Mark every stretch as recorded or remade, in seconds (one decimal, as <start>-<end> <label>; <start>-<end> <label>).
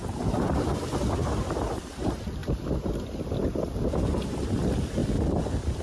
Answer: 0.0-1.2 remade; 1.2-1.8 recorded; 1.8-2.4 remade; 2.4-4.2 recorded; 4.2-5.0 remade; 5.0-5.8 recorded